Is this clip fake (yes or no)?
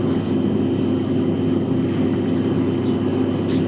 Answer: no